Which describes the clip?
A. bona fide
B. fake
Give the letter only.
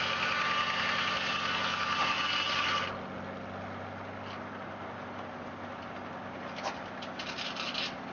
A